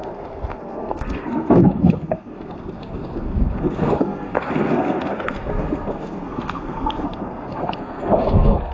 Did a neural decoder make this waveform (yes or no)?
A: yes